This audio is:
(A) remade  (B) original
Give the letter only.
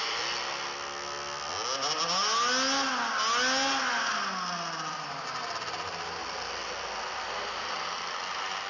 B